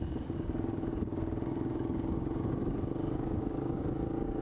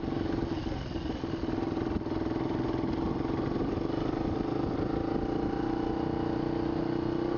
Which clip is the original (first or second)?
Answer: second